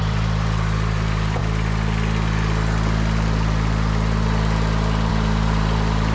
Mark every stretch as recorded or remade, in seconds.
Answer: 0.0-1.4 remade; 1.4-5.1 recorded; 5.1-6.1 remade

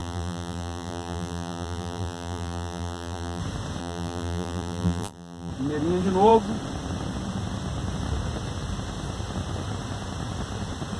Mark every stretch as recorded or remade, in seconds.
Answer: 0.0-3.4 remade; 3.4-3.8 recorded; 3.8-5.5 remade; 5.5-11.0 recorded

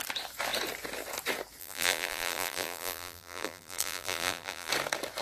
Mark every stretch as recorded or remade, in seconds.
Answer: 0.0-1.6 recorded; 1.6-4.7 remade; 4.7-5.2 recorded

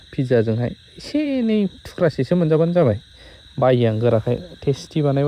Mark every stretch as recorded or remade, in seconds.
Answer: 0.0-1.1 recorded; 1.1-3.6 remade; 3.6-5.3 recorded

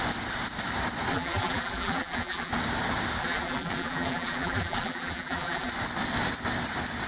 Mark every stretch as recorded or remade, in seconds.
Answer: 0.0-1.1 recorded; 1.1-2.5 remade; 2.5-3.2 recorded; 3.2-5.7 remade; 5.7-7.1 recorded

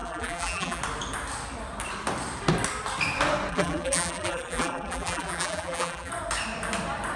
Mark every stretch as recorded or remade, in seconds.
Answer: 0.0-0.8 remade; 0.8-3.5 recorded; 3.5-6.1 remade; 6.1-7.2 recorded